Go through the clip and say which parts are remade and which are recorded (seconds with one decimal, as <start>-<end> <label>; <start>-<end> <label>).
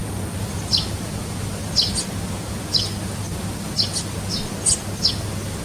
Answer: 0.0-5.6 recorded